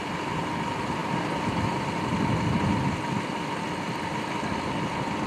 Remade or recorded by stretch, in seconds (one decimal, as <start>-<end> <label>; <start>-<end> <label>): 0.0-5.3 recorded